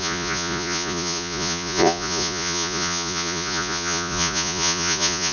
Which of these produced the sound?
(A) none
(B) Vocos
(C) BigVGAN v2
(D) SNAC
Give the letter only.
B